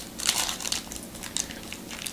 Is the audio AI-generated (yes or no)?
no